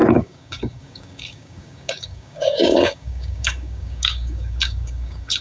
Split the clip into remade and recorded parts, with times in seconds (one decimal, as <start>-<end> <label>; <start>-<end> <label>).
0.0-5.4 remade